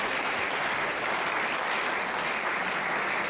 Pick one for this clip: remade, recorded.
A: recorded